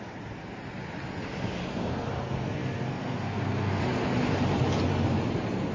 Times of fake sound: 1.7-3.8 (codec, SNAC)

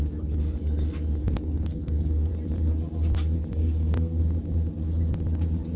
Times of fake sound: 1.2-2.3 (codec, SNAC); 3.6-4.2

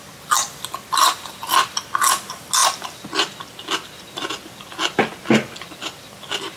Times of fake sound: none